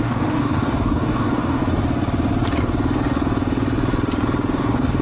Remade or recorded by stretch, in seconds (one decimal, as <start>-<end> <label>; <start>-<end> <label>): 0.0-1.6 remade; 1.6-4.6 recorded; 4.6-5.0 remade